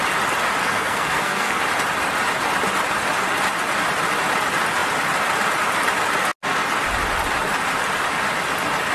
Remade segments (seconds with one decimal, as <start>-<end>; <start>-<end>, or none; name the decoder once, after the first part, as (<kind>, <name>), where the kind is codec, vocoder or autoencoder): 0.6-1.6 (codec, SNAC)